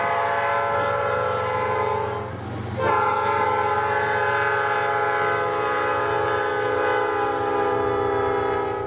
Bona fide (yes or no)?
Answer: yes